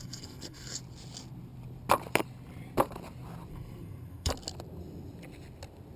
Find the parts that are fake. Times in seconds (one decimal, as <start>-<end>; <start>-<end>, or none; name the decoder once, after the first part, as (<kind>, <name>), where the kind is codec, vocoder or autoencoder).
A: 0.0-0.8 (codec, SNAC); 3.5-4.3